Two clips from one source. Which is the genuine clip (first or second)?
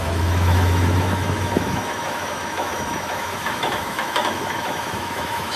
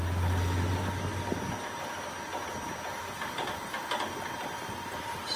second